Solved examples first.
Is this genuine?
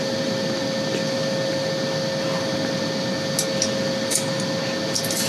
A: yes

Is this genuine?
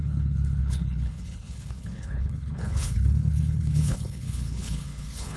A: no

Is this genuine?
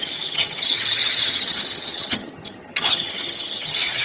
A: no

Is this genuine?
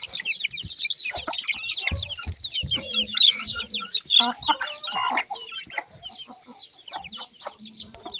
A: yes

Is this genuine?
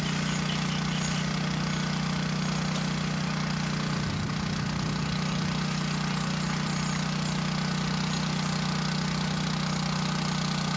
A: yes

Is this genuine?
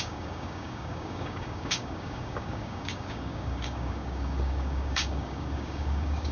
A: no